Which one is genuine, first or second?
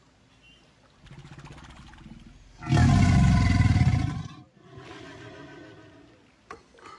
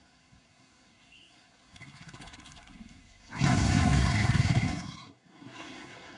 first